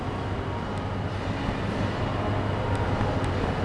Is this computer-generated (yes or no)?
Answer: no